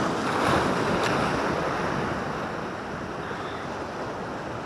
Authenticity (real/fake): real